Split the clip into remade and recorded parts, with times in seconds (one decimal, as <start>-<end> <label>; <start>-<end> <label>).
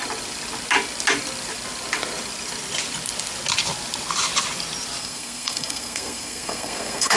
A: 0.0-5.0 recorded; 5.0-7.2 remade